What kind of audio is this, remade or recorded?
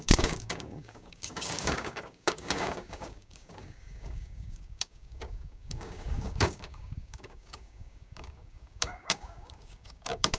remade